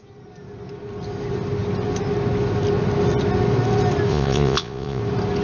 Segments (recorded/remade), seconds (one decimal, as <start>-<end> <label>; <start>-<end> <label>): 0.0-4.1 recorded; 4.1-5.0 remade; 5.0-5.4 recorded